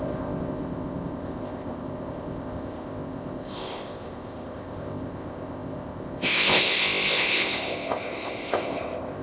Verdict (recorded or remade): remade